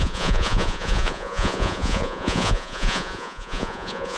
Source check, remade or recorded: remade